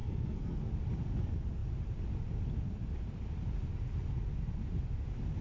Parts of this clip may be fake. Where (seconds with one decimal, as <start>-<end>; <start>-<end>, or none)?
0.0-0.7